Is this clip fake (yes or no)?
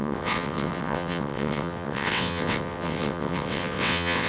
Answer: yes